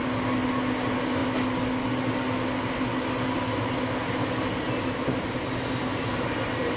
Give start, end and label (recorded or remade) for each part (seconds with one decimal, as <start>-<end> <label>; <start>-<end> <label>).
0.0-6.8 recorded